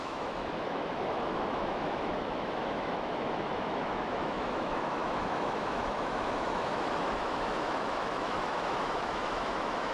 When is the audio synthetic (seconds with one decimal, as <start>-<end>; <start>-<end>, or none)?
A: 0.0-9.9